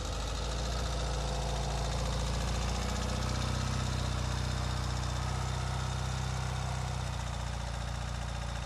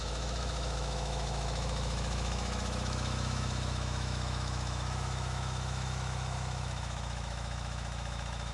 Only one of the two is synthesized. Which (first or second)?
second